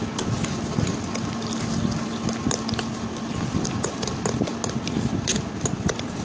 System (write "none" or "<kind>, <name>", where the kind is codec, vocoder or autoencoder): none